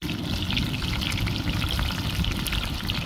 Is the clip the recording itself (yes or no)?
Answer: yes